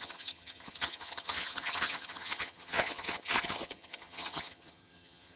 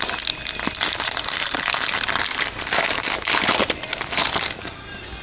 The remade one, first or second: first